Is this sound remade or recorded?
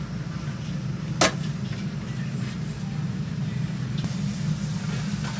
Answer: recorded